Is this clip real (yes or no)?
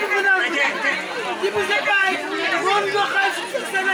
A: yes